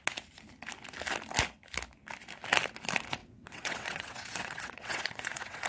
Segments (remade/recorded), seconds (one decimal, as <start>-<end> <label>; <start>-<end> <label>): 0.0-3.2 recorded; 3.2-5.7 remade